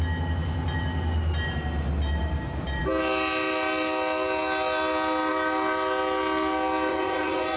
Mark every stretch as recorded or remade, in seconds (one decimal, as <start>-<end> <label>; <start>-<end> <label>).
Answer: 0.0-6.9 recorded; 6.9-7.6 remade